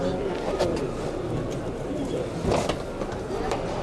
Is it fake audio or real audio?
real